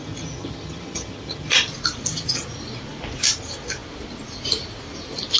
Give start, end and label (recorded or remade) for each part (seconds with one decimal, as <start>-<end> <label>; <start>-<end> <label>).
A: 0.0-1.5 remade; 1.5-5.4 recorded